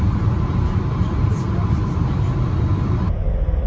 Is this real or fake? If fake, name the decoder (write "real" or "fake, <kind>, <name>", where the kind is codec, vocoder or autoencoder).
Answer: real